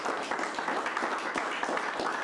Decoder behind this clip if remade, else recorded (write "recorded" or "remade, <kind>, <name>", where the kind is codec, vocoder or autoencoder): recorded